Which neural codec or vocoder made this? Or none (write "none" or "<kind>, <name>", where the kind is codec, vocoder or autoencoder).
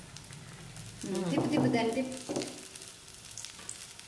none